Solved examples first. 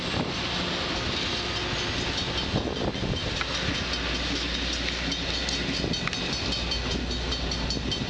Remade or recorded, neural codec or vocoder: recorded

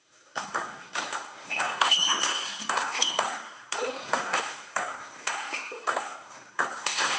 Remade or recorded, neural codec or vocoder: remade, codec, SNAC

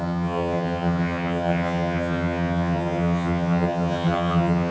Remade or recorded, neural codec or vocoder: remade, vocoder, HiFi-GAN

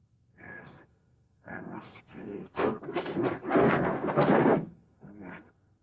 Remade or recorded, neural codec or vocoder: remade, codec, SNAC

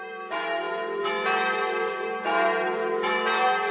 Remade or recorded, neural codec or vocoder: recorded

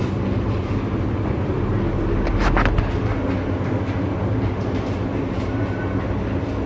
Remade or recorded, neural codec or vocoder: recorded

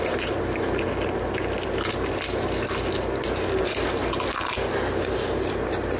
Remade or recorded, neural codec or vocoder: recorded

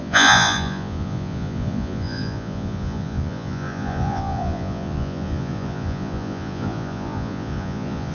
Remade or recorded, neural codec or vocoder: remade, vocoder, Vocos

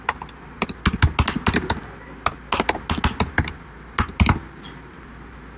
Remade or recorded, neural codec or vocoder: recorded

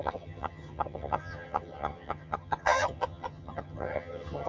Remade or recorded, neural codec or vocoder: remade, vocoder, HiFi-GAN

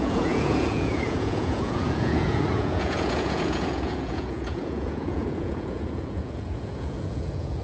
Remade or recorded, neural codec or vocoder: remade, vocoder, Vocos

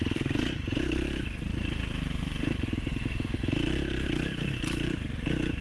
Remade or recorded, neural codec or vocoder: remade, vocoder, BigVGAN v2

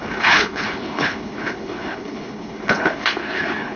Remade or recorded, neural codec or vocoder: remade, codec, HILCodec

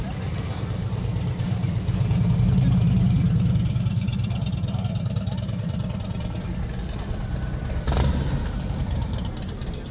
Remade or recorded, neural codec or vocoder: remade, vocoder, BigVGAN v2